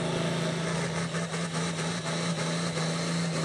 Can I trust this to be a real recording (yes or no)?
yes